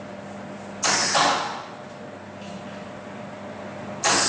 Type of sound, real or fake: real